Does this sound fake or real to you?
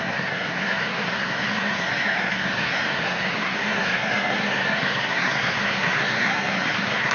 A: fake